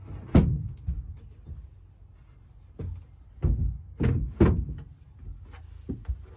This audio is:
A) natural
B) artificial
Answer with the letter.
A